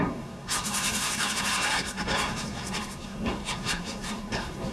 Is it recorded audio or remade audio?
remade